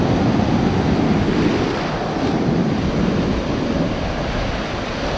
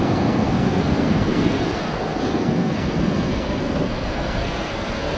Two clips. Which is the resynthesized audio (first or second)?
second